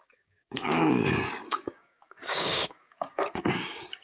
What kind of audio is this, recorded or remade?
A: remade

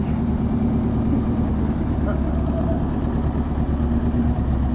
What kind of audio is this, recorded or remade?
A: recorded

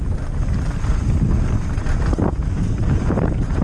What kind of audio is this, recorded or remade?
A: recorded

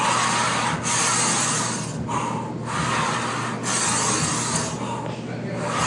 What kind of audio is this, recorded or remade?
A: recorded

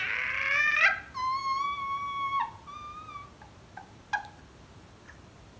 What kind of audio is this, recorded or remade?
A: recorded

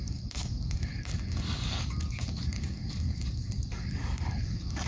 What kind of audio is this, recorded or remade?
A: remade